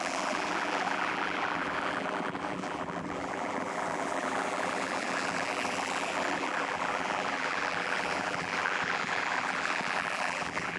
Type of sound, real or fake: fake